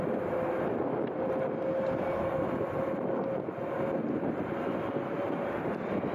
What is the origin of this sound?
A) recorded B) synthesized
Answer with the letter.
A